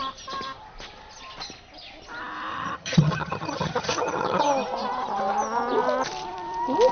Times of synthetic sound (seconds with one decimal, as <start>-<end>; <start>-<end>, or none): 2.5-4.4